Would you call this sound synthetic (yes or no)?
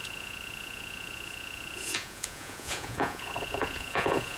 yes